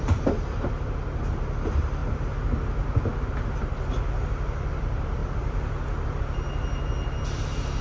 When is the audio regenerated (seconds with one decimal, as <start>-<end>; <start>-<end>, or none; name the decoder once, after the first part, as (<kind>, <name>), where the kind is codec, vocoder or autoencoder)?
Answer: none